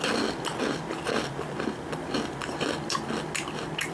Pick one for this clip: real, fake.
real